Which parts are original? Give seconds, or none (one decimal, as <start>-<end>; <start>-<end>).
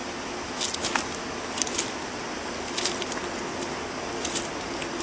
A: 0.0-5.0